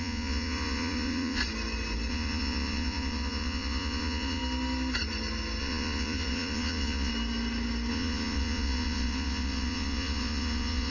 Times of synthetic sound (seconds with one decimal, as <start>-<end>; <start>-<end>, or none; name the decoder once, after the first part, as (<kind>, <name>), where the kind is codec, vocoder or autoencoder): 0.0-1.4 (vocoder, Vocos); 2.1-4.4; 5.6-7.1; 7.9-10.9